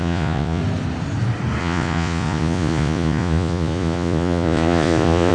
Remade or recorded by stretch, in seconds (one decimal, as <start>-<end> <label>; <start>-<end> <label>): 0.0-0.6 remade; 0.6-1.6 recorded; 1.6-5.3 remade